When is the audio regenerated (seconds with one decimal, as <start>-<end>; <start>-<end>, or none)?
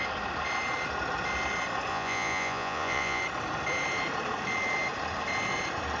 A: 1.9-3.2